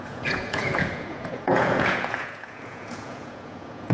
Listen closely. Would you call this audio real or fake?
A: fake